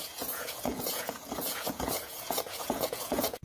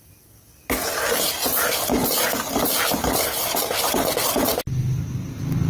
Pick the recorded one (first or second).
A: second